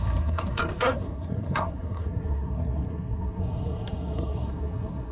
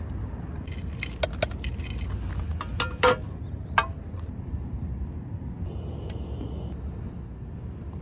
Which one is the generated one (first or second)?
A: first